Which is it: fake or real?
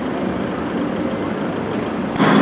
real